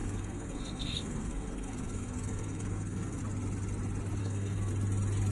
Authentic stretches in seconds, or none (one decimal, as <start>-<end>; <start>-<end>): 3.2-4.2; 4.7-5.3